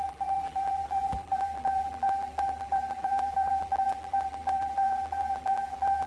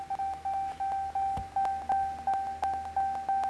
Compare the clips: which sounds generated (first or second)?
first